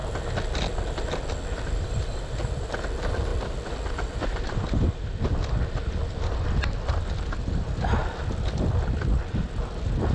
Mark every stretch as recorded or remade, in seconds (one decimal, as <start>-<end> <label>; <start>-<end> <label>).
0.0-1.5 recorded; 1.5-3.3 remade; 3.3-3.9 recorded; 3.9-10.1 remade